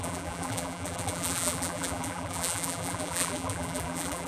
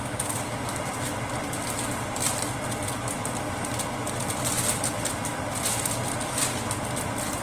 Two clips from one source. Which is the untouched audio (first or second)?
second